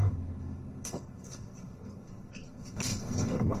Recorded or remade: remade